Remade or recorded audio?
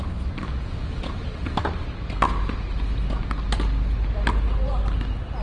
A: recorded